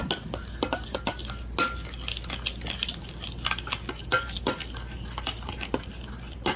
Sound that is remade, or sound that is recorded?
recorded